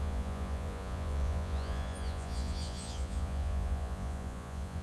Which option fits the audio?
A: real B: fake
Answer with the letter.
B